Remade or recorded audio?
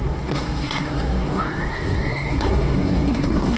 remade